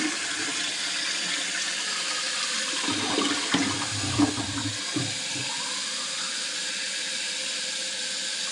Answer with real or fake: real